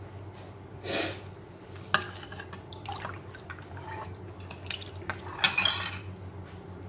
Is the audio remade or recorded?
recorded